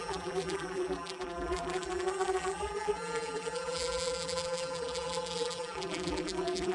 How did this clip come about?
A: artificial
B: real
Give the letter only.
A